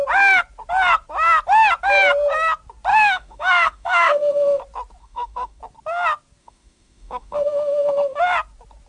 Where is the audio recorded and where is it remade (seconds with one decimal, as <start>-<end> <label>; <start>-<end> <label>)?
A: 0.0-2.9 recorded; 2.9-4.6 remade; 4.6-5.0 recorded; 5.0-5.6 remade; 5.6-6.4 recorded; 6.4-8.2 remade; 8.2-8.9 recorded